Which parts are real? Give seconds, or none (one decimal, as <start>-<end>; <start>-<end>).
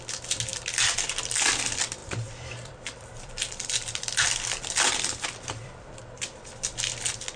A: 0.0-0.5; 1.2-2.0; 6.0-7.4